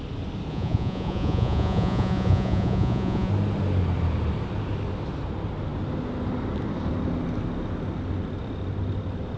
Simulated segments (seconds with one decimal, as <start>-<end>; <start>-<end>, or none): 0.5-3.3